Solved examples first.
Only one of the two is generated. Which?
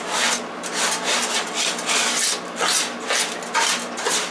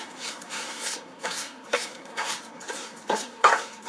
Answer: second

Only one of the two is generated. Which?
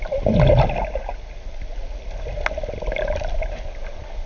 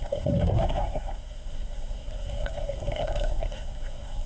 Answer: second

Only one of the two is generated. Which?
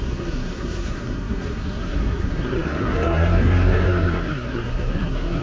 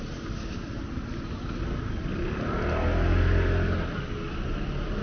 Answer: first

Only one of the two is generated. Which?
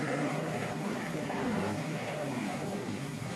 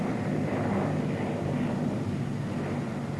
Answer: first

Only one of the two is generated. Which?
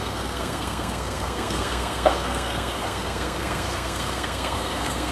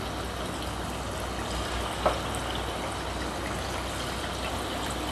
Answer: first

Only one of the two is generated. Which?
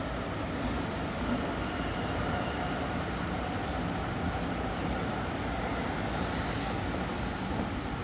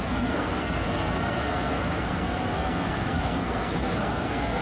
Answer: second